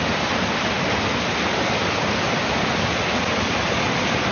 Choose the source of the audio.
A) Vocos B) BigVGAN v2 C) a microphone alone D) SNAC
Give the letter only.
C